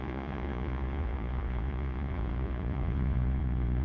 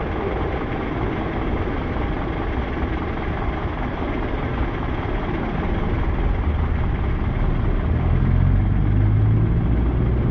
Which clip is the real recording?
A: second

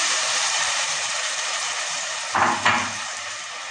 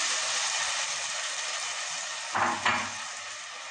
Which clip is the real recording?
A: second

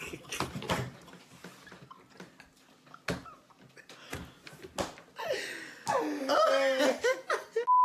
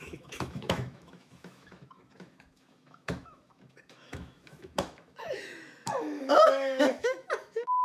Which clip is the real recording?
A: first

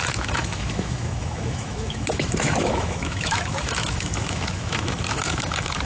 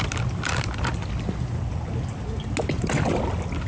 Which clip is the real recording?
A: second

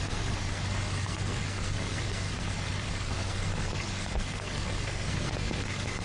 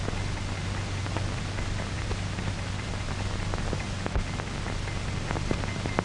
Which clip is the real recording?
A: second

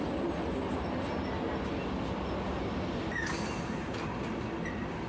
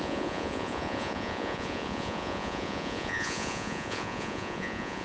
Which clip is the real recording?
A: first